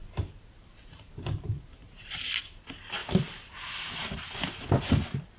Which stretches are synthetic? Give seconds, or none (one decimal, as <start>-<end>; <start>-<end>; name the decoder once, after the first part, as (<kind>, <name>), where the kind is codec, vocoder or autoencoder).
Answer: 0.0-1.1 (vocoder, BigVGAN v2); 1.8-2.3; 3.0-4.2